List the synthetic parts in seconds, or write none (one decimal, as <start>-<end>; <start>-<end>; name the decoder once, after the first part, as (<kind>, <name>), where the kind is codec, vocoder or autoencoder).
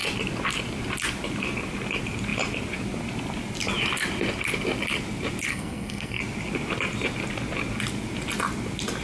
5.5-6.2 (codec, SNAC)